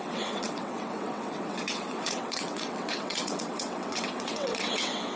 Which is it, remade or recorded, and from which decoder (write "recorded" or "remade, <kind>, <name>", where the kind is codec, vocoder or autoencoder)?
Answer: remade, vocoder, WaveNeXt